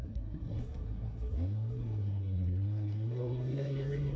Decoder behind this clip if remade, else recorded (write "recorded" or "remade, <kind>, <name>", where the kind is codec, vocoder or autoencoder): remade, codec, SNAC